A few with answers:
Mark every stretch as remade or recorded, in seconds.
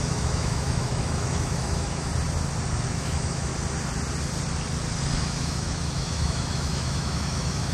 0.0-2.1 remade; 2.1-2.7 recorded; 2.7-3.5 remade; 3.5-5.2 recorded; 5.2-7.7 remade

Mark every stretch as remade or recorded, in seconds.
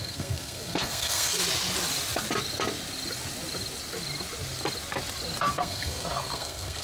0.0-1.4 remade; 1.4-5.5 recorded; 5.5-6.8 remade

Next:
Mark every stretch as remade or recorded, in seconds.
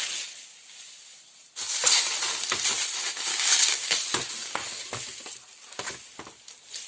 0.0-3.3 recorded; 3.3-4.0 remade; 4.0-6.9 recorded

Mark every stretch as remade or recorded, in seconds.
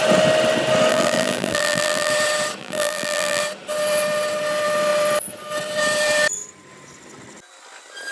0.0-0.9 recorded; 0.9-2.1 remade; 2.1-2.6 recorded; 2.6-3.4 remade; 3.4-8.1 recorded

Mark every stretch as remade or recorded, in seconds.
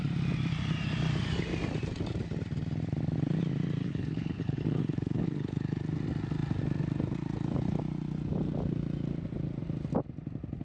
0.0-3.8 recorded; 3.8-5.8 remade; 5.8-10.6 recorded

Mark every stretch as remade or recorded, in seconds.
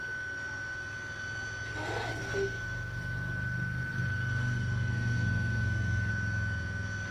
0.0-2.1 recorded; 2.1-6.1 remade; 6.1-7.1 recorded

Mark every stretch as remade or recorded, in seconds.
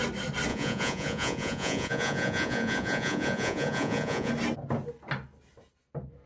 0.0-0.5 recorded; 0.5-4.3 remade; 4.3-6.3 recorded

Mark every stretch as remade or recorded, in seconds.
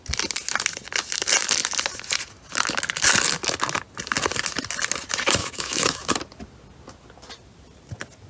0.0-5.4 recorded; 5.4-6.1 remade; 6.1-8.3 recorded